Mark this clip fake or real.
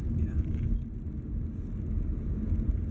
real